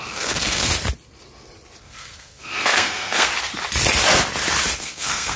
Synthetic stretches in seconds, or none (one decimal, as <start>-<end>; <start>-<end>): 0.0-0.7; 1.8-3.3; 4.8-5.4